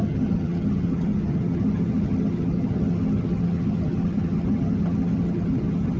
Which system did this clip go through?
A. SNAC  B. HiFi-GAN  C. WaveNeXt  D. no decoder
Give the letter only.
B